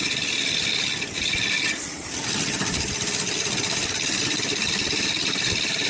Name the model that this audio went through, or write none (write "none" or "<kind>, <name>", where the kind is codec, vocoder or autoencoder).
none